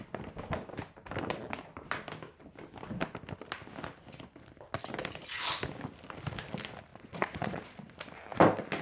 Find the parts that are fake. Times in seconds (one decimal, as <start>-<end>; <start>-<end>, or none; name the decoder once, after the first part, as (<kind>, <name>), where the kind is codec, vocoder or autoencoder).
6.9-7.9 (vocoder, Vocos)